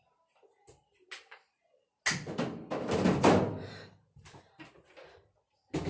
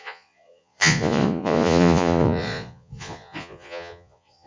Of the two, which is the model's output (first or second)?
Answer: second